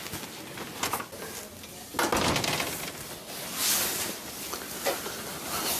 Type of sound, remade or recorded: recorded